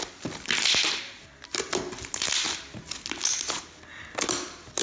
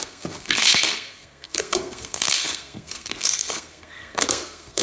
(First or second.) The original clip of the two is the first